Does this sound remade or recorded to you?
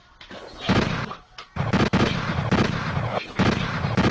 recorded